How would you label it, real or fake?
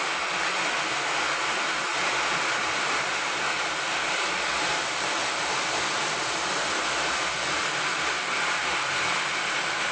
real